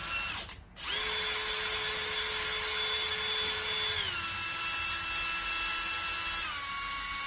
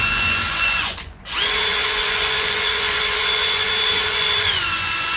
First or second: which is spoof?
second